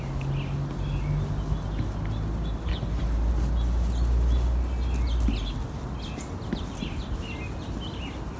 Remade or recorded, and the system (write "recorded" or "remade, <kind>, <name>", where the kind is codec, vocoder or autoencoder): recorded